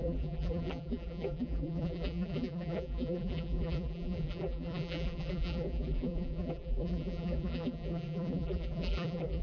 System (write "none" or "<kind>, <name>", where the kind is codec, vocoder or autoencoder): vocoder, BigVGAN v2